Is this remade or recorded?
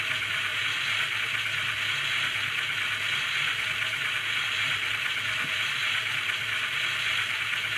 recorded